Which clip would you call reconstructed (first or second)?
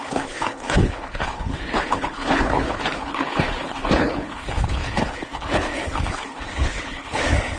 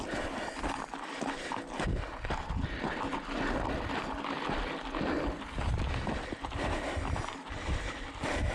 first